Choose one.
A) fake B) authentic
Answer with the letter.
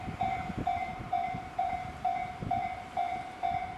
A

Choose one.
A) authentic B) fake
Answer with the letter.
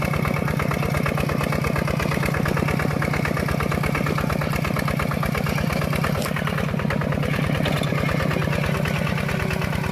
A